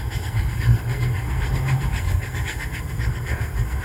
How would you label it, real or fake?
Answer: fake